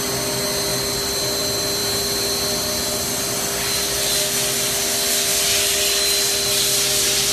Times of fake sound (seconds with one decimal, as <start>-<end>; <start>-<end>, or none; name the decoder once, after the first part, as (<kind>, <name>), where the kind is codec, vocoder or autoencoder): none